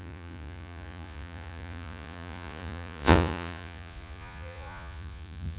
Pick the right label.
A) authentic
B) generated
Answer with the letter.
B